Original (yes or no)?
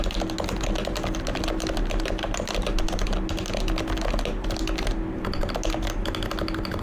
yes